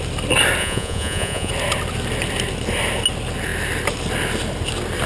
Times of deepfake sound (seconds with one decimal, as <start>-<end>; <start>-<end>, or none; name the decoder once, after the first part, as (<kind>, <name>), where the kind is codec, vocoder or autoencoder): 0.6-1.5 (vocoder, Vocos)